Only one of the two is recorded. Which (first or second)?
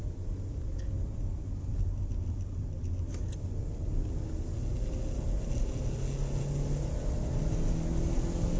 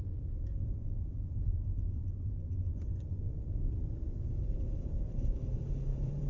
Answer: first